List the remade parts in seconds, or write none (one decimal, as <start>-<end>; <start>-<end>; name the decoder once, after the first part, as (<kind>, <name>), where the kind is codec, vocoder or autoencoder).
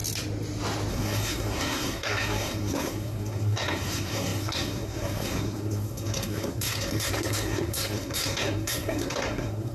0.9-9.7 (codec, SNAC)